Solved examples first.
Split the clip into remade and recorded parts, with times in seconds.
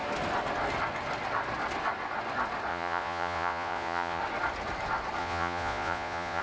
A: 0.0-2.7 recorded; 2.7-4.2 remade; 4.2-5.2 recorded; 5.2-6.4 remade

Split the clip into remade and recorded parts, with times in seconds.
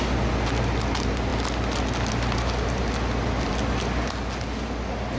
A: 0.0-5.2 recorded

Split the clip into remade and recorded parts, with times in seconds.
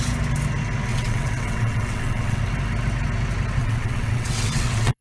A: 0.0-0.9 recorded; 0.9-2.4 remade; 2.4-3.6 recorded; 3.6-5.0 remade